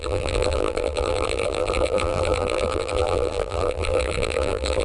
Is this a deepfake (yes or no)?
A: yes